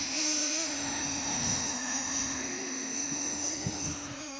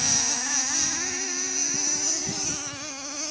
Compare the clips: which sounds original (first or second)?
second